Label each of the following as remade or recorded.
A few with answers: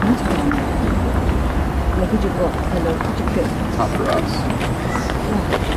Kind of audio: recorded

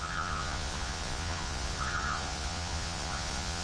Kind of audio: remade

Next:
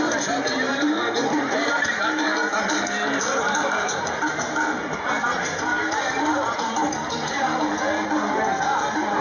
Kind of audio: remade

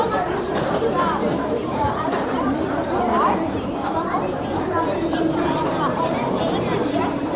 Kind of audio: remade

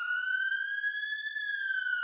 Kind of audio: recorded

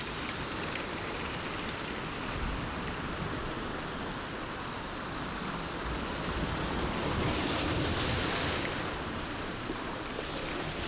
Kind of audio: recorded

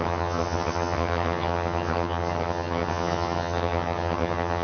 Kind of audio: remade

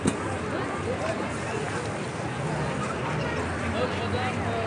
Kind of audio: recorded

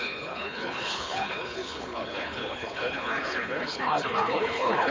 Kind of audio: remade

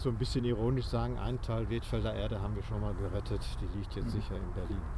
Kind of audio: recorded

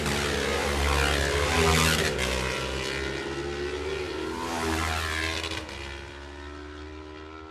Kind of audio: recorded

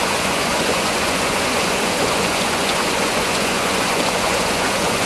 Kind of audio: remade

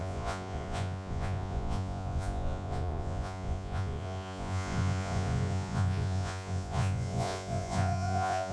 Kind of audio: remade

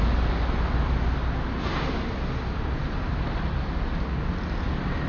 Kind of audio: recorded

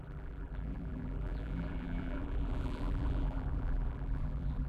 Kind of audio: remade